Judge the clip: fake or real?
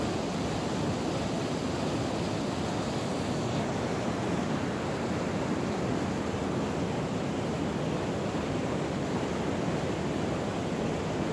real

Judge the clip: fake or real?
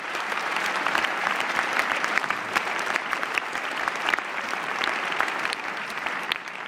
fake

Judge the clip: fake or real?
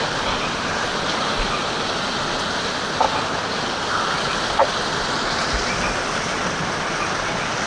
real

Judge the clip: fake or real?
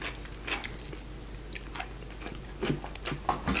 real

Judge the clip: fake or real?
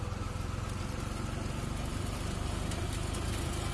real